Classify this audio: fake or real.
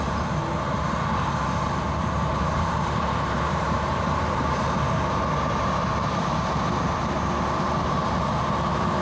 fake